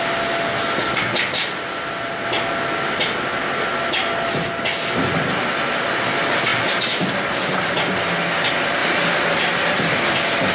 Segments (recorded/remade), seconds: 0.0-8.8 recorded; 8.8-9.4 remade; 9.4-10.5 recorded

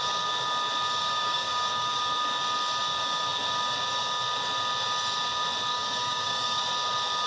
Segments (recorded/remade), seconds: 0.0-1.0 recorded; 1.0-2.0 remade; 2.0-5.7 recorded; 5.7-6.6 remade; 6.6-7.3 recorded

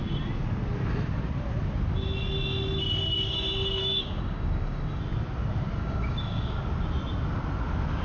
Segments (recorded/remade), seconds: 0.0-3.8 recorded; 3.8-5.0 remade; 5.0-5.8 recorded; 5.8-6.6 remade; 6.6-8.0 recorded